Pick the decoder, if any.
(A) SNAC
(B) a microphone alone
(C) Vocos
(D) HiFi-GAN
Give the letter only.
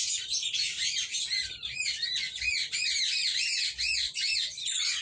B